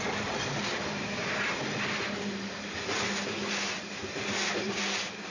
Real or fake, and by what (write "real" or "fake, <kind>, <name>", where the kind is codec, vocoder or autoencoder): real